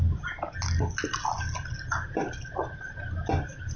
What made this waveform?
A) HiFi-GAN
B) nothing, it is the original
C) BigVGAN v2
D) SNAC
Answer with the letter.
B